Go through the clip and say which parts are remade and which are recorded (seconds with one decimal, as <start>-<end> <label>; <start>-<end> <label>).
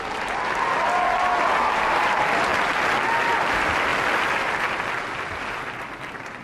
0.0-6.4 recorded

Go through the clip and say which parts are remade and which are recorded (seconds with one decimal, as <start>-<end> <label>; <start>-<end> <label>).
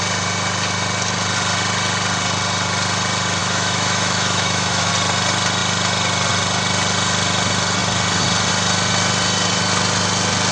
0.0-3.4 recorded; 3.4-4.9 remade; 4.9-10.5 recorded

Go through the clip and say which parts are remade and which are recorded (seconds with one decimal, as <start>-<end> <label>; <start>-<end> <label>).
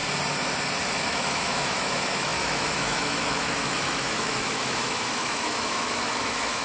0.0-1.0 recorded; 1.0-6.6 remade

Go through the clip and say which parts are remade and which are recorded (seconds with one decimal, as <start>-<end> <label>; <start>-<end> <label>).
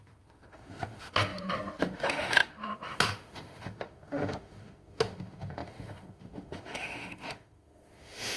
0.0-8.4 remade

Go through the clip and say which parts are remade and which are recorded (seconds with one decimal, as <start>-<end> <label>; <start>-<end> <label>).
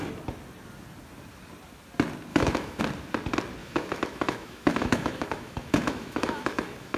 0.0-2.3 recorded; 2.3-2.8 remade; 2.8-3.6 recorded; 3.6-7.0 remade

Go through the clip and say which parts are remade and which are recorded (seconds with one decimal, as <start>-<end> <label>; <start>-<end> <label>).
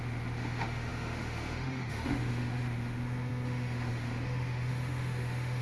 0.0-5.6 remade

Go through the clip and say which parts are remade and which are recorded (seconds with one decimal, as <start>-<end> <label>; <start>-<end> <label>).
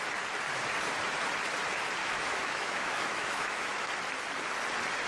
0.0-2.0 recorded; 2.0-3.9 remade; 3.9-5.1 recorded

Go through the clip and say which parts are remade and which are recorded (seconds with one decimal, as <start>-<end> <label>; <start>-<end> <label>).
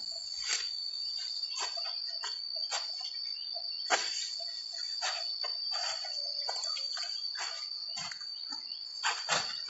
0.0-9.7 recorded